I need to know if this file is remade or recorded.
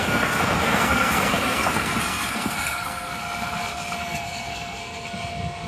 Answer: remade